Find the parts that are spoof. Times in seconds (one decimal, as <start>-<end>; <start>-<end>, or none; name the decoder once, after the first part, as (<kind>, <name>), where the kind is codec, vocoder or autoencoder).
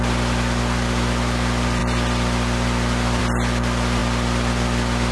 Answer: none